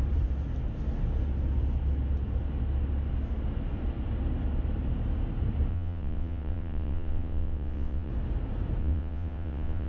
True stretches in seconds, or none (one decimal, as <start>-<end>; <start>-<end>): 0.0-5.7; 8.1-8.8